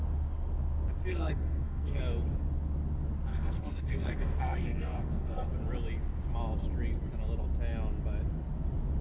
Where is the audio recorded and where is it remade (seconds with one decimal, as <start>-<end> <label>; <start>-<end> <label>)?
0.0-1.1 recorded; 1.1-2.0 remade; 2.0-3.3 recorded; 3.3-5.5 remade; 5.5-9.0 recorded